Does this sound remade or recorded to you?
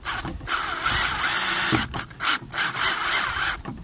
recorded